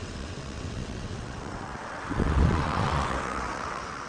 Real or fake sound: fake